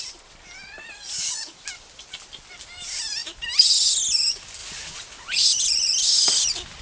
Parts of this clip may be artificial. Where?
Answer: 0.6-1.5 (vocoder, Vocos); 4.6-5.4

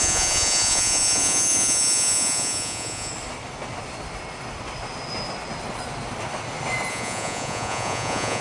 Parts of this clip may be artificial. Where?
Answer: 0.0-3.1 (vocoder, Vocos); 6.9-8.4